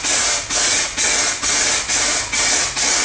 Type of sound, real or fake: real